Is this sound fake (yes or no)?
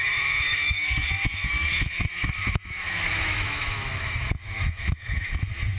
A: yes